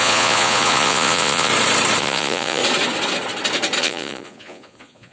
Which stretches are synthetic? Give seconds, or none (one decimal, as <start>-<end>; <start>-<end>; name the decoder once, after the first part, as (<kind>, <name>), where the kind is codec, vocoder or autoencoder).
0.0-1.5 (vocoder, Vocos); 2.0-2.6; 3.8-5.1